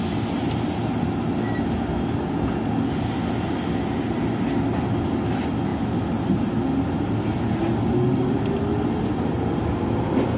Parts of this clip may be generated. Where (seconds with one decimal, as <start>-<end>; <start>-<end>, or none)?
none